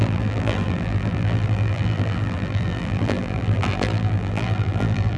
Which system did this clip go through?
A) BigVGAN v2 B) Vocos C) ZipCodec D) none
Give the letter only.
A